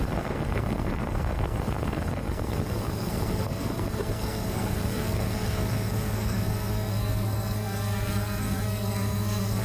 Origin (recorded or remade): remade